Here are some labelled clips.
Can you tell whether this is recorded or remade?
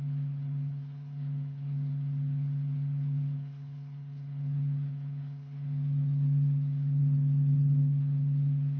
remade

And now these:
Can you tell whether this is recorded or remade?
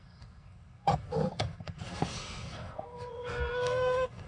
remade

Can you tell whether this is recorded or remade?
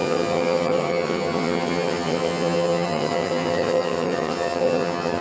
remade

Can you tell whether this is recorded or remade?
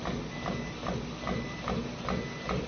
recorded